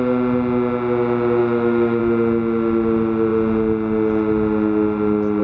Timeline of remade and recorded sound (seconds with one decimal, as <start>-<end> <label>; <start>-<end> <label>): 0.0-1.4 recorded; 1.4-2.0 remade; 2.0-5.4 recorded